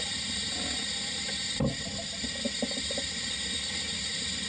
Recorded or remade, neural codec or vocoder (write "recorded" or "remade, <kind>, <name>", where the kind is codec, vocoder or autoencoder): recorded